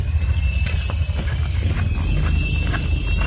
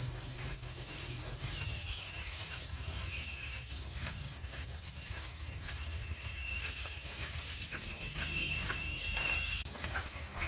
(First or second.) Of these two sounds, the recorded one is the first